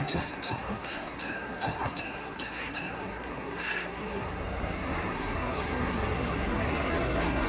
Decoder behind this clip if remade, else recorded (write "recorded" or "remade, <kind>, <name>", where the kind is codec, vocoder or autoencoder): remade, codec, SNAC